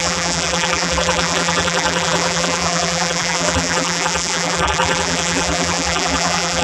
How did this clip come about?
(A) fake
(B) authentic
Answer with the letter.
A